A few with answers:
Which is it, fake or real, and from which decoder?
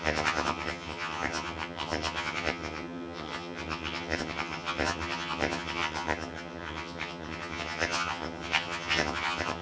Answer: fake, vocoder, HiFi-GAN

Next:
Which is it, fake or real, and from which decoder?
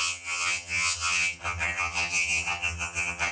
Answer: fake, vocoder, HiFi-GAN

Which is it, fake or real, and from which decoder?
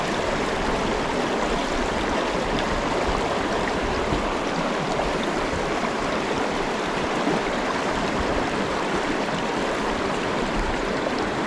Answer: fake, vocoder, BigVGAN v2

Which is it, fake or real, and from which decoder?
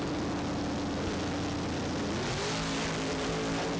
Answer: real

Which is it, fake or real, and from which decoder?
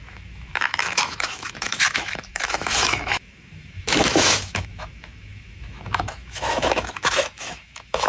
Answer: fake, autoencoder, DAC-VAE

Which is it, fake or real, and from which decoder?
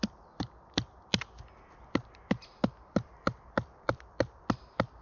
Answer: real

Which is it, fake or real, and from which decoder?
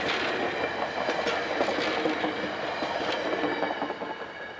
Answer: real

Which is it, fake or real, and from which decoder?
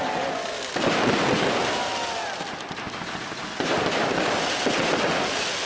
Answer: real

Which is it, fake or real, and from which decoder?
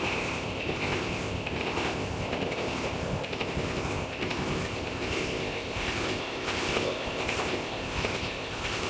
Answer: fake, codec, ZipCodec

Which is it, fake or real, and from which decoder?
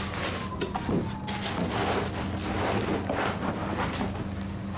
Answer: real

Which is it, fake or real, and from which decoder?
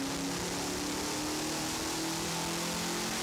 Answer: real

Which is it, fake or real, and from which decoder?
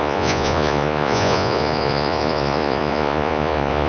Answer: fake, vocoder, Vocos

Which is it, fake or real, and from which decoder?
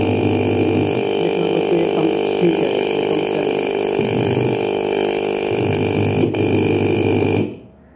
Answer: real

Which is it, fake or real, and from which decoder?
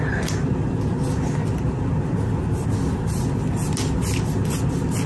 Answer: real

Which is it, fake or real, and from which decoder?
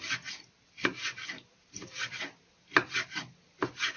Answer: real